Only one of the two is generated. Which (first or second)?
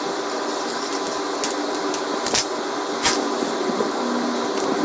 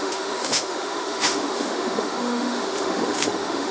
second